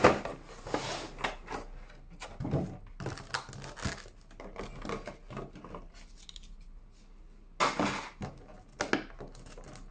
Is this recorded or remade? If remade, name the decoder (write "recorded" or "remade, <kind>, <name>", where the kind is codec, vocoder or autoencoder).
recorded